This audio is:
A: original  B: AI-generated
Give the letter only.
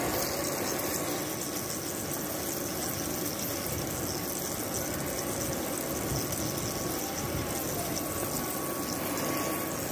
A